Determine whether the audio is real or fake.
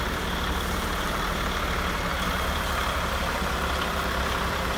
fake